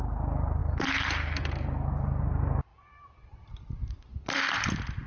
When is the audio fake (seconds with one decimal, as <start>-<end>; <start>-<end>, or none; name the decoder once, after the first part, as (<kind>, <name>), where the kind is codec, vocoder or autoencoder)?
0.6-1.4 (vocoder, BigVGAN v2); 2.7-5.1